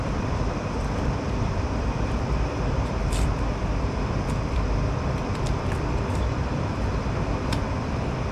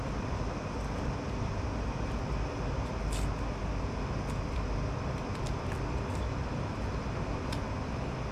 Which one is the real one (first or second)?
second